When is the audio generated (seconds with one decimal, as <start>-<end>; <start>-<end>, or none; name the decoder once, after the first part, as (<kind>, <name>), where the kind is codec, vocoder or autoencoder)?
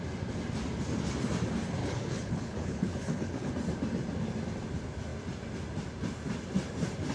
1.8-3.5 (codec, HILCodec)